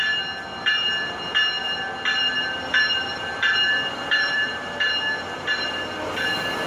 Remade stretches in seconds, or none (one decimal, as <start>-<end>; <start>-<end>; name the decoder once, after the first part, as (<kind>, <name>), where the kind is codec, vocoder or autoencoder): 1.6-4.9 (vocoder, BigVGAN v2)